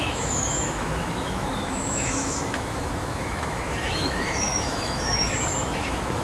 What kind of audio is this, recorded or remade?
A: remade